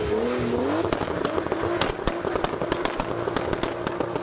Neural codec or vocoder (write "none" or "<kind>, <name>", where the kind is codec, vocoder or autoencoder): none